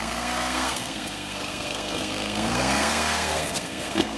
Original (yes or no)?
no